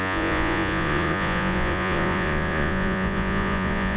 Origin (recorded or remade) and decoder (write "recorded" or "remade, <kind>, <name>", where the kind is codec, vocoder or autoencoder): remade, vocoder, Vocos